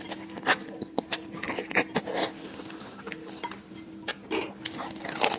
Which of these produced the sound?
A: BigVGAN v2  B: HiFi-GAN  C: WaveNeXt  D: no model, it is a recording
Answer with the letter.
D